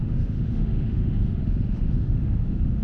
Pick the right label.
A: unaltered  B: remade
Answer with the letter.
B